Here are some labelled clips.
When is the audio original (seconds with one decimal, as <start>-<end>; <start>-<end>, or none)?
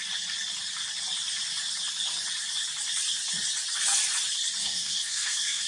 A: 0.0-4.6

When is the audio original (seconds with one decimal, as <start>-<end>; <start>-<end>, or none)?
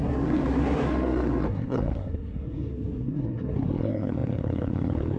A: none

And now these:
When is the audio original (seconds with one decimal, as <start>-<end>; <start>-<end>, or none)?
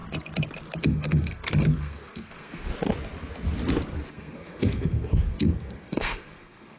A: 0.0-0.8; 2.7-4.1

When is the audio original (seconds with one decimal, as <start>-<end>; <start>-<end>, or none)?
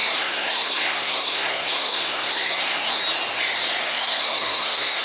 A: 3.0-3.8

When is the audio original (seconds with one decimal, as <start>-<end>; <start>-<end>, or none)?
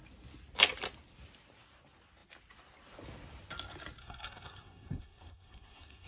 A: 0.0-4.0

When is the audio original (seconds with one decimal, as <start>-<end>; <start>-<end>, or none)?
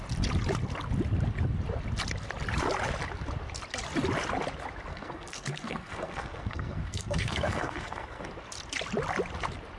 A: 0.0-4.9; 8.3-9.8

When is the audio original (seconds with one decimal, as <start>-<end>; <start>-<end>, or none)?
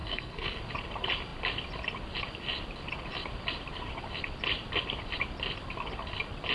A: 0.6-6.5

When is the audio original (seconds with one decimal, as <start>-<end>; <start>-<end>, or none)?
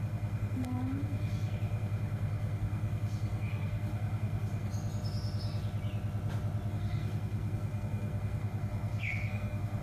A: 4.7-6.7